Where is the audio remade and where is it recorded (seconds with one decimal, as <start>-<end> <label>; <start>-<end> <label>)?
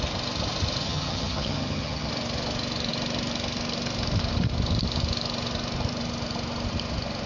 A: 0.0-0.8 recorded; 0.8-2.1 remade; 2.1-7.3 recorded